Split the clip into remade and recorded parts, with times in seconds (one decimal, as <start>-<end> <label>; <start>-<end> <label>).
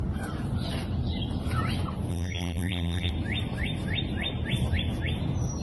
0.0-2.1 recorded; 2.1-3.1 remade; 3.1-5.6 recorded